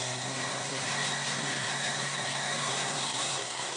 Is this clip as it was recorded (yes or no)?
no